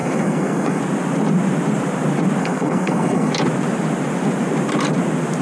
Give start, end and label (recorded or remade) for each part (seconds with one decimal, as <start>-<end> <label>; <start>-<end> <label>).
0.0-0.8 remade; 0.8-2.4 recorded; 2.4-3.3 remade; 3.3-5.4 recorded